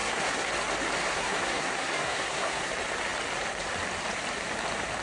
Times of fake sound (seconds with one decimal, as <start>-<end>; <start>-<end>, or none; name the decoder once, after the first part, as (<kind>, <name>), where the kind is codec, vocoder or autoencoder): 0.0-0.5 (codec, SNAC); 1.1-2.7